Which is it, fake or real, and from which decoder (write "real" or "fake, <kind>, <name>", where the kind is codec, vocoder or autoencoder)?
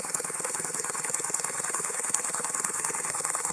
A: fake, codec, SNAC